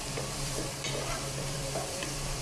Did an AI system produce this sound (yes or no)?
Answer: yes